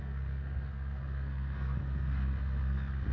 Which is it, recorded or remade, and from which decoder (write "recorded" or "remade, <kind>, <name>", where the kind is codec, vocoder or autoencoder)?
remade, codec, SNAC